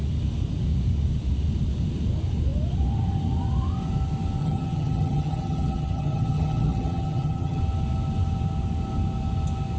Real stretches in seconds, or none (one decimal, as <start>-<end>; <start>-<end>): 0.0-4.4; 7.6-9.8